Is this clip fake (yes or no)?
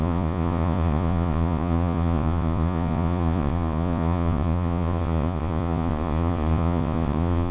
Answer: yes